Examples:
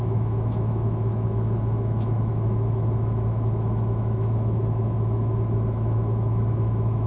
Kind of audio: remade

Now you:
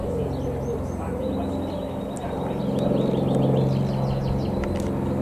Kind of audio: recorded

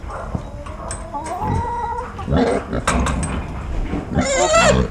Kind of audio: recorded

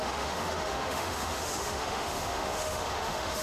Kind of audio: remade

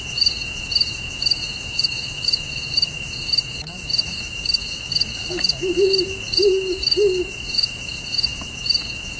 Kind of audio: remade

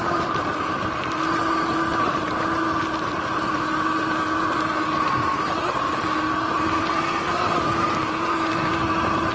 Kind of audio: recorded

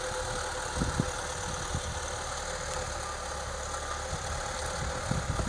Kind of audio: recorded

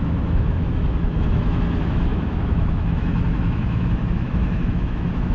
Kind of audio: remade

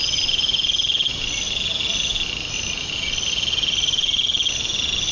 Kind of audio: recorded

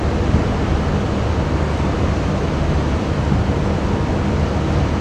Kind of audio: recorded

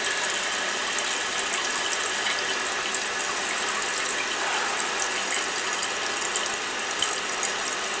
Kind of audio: recorded